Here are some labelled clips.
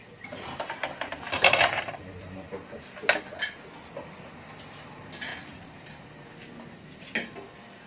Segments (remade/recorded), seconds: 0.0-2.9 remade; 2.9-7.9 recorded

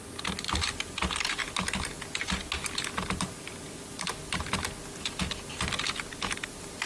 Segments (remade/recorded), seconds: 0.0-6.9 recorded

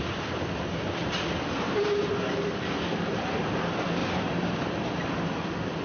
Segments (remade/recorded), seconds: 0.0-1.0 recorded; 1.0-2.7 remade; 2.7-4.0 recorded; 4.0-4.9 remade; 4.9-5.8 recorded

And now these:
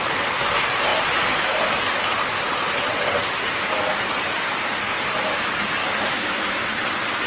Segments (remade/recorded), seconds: 0.0-5.8 recorded; 5.8-6.7 remade; 6.7-7.3 recorded

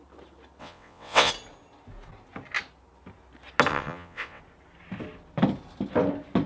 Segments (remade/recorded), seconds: 0.0-0.6 recorded; 0.6-1.3 remade; 1.3-3.7 recorded; 3.7-4.4 remade; 4.4-6.5 recorded

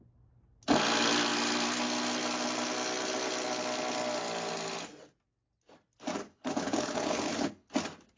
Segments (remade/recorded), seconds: 0.0-6.2 recorded; 6.2-7.7 remade; 7.7-8.2 recorded